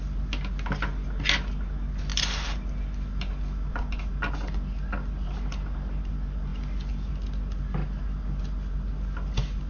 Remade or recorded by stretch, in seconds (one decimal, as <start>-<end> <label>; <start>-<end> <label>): 0.0-9.7 recorded